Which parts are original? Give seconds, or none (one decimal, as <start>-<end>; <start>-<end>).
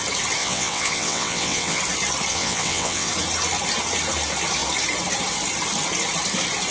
0.0-0.4; 1.8-2.3; 3.1-6.7